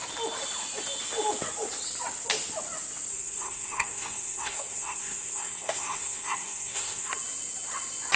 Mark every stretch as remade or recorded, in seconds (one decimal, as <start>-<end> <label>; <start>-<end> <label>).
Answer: 0.0-3.1 recorded; 3.1-7.1 remade; 7.1-8.2 recorded